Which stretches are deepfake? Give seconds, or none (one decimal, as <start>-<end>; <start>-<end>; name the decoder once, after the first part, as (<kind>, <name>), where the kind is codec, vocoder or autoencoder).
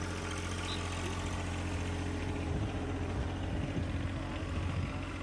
2.2-3.8 (vocoder, BigVGAN v2)